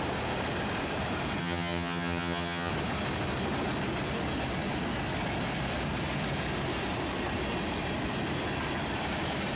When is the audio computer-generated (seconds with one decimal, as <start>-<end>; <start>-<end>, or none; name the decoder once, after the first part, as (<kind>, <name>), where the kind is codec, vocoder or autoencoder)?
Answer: 1.4-2.7 (vocoder, HiFi-GAN)